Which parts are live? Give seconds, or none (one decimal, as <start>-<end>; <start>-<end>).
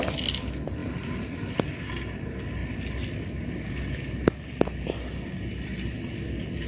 0.0-6.7